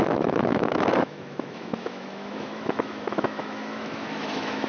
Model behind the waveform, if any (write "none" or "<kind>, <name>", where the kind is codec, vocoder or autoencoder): autoencoder, DAC-VAE